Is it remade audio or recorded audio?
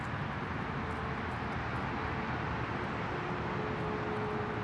recorded